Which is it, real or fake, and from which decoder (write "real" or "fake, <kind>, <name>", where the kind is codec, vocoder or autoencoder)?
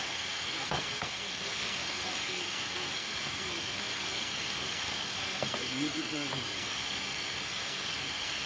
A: fake, codec, SNAC